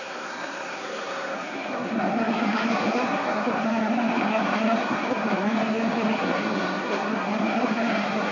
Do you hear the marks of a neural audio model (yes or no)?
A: yes